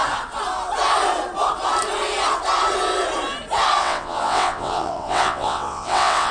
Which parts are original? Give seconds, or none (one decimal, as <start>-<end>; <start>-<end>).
0.0-3.8